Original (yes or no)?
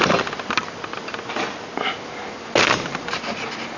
yes